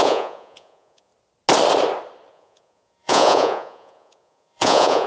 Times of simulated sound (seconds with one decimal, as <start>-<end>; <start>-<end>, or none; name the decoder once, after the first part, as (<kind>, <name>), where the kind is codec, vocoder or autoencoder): 0.0-1.1 (vocoder, Vocos); 2.3-5.1